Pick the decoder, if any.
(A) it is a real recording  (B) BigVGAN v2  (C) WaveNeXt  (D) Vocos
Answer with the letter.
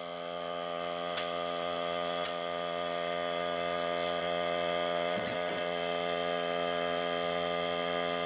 C